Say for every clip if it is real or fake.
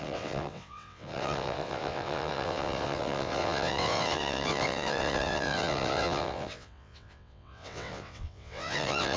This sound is fake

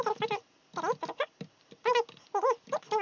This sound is real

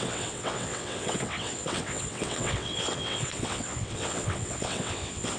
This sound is fake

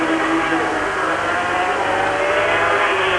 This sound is real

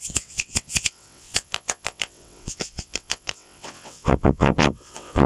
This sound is fake